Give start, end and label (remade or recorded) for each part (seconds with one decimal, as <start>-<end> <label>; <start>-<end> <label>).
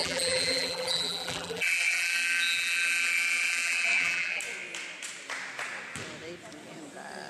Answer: 0.0-4.4 remade; 4.4-7.3 recorded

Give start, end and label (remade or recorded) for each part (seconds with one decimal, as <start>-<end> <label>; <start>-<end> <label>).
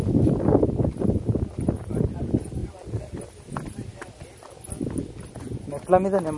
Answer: 0.0-2.6 recorded; 2.6-3.2 remade; 3.2-6.4 recorded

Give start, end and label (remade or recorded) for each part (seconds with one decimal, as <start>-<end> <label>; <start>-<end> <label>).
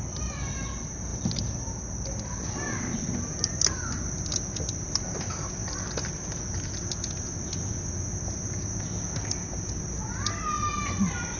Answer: 0.0-1.1 recorded; 1.1-1.8 remade; 1.8-11.4 recorded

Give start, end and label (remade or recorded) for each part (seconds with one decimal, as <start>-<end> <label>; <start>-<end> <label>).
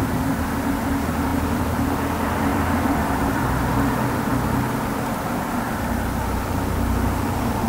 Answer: 0.0-1.3 recorded; 1.3-1.8 remade; 1.8-2.5 recorded; 2.5-3.5 remade; 3.5-7.7 recorded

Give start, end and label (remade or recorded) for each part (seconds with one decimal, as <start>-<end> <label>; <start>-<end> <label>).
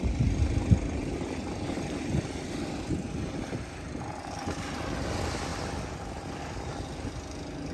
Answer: 0.0-1.0 recorded; 1.0-2.0 remade; 2.0-7.7 recorded